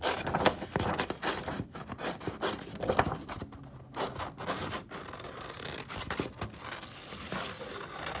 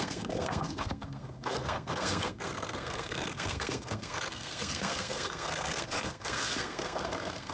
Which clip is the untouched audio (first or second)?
first